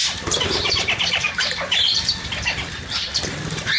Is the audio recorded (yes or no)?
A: no